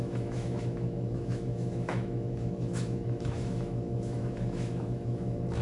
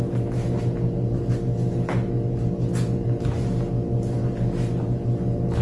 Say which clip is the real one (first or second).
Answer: second